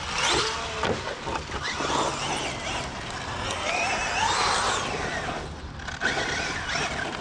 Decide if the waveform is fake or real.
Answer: real